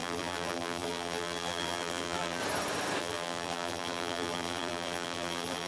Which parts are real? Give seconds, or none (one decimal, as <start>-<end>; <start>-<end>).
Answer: 2.4-3.0